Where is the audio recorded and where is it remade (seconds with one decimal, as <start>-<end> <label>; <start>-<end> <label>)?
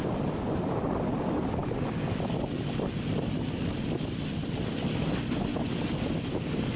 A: 0.0-6.8 recorded